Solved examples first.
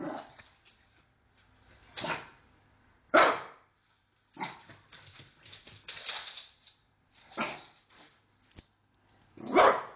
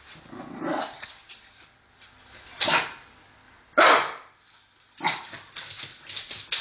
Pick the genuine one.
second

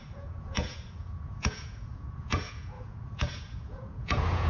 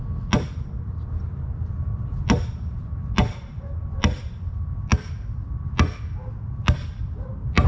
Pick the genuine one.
second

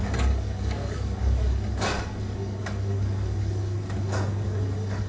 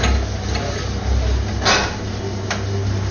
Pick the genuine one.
second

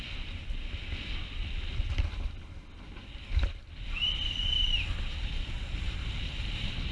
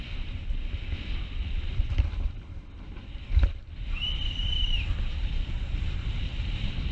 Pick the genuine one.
first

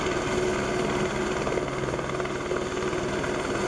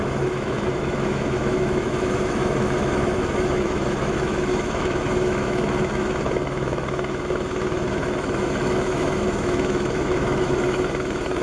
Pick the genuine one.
first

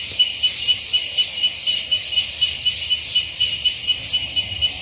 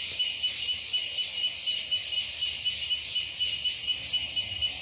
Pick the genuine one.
second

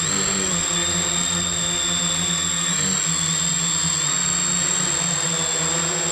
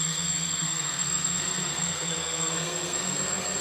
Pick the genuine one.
first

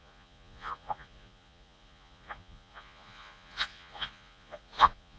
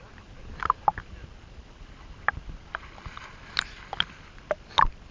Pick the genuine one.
second